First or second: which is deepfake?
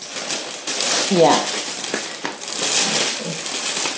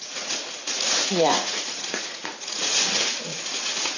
second